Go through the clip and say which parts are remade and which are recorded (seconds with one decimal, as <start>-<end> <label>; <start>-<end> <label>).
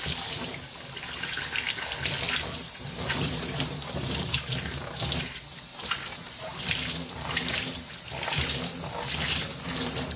0.0-2.5 recorded; 2.5-4.5 remade; 4.5-5.7 recorded; 5.7-6.6 remade; 6.6-10.2 recorded